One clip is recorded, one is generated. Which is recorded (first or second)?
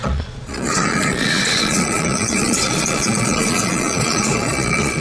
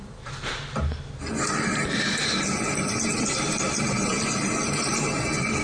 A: second